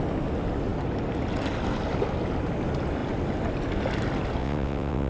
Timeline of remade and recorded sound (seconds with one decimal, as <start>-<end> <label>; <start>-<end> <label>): 0.0-4.4 recorded; 4.4-5.1 remade